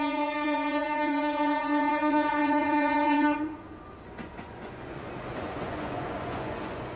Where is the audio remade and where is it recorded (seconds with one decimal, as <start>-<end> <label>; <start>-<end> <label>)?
0.0-7.0 remade